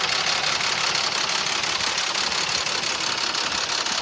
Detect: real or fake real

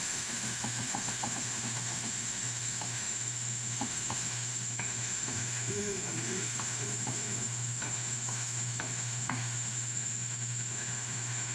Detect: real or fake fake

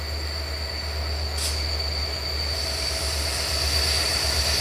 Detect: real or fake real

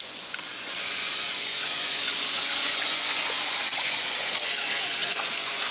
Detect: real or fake fake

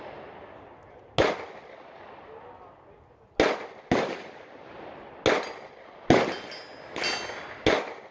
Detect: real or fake real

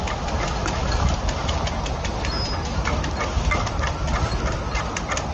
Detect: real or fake real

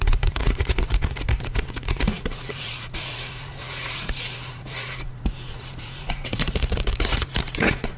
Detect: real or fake fake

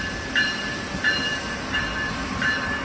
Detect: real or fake fake